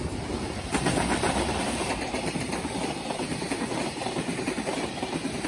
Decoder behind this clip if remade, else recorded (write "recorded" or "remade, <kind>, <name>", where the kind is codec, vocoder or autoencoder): remade, vocoder, BigVGAN v2